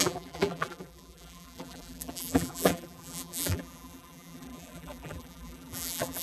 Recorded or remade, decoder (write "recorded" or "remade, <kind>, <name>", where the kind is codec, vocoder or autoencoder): remade, vocoder, BigVGAN v2